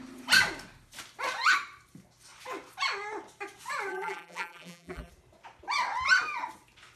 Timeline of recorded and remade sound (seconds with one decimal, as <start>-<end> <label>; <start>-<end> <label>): 0.0-3.9 recorded; 3.9-5.1 remade; 5.1-7.0 recorded